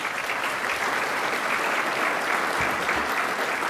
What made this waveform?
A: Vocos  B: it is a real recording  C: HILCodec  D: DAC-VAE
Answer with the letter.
B